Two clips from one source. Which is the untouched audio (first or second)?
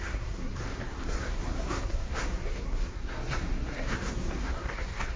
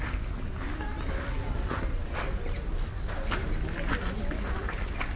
second